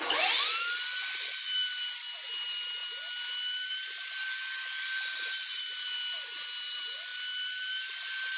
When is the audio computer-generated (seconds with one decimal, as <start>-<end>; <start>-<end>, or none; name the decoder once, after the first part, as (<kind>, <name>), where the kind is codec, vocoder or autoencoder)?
none

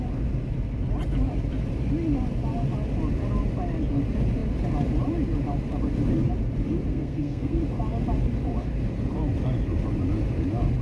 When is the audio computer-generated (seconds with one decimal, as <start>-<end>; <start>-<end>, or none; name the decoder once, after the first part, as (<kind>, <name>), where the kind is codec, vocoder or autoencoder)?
6.9-7.6 (codec, SNAC)